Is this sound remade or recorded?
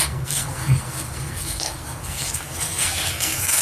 remade